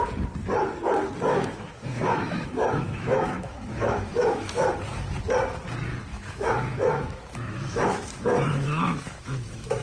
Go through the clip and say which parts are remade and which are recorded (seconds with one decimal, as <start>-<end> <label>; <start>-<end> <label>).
0.0-1.3 recorded; 1.3-4.7 remade; 4.7-6.1 recorded; 6.1-9.8 remade